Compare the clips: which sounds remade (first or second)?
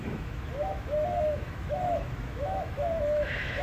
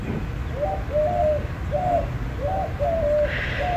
first